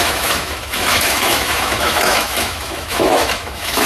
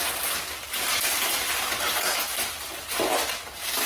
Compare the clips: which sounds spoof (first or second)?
first